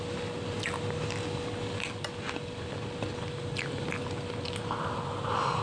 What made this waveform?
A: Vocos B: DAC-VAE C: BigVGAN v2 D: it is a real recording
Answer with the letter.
D